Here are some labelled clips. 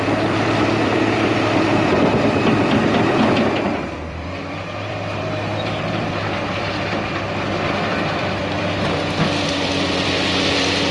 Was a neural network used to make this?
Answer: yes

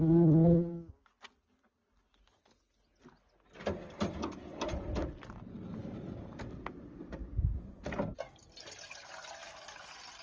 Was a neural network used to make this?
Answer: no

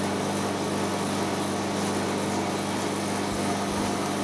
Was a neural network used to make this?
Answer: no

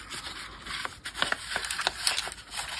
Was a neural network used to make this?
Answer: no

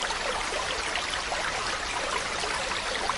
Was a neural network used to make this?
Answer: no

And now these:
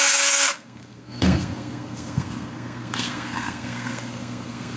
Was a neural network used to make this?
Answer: yes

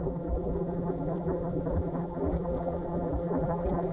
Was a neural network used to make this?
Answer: yes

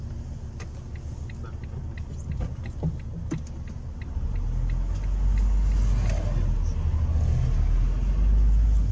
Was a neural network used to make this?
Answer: no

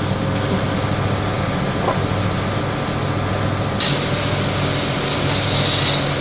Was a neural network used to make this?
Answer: no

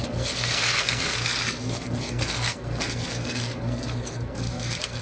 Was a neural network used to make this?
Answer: yes